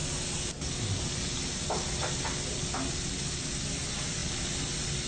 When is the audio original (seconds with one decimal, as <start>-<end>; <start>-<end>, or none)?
0.0-5.1